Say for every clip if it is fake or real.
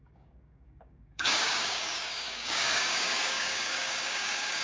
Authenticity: fake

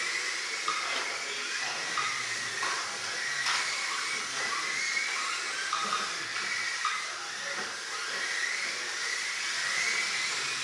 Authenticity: real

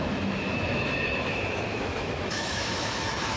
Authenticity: fake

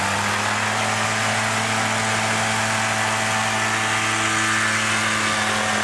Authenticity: real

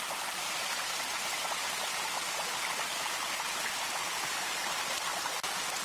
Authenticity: real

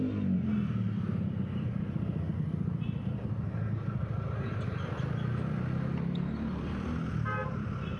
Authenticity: real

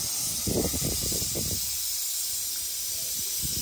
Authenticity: real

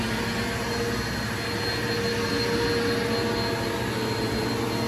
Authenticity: real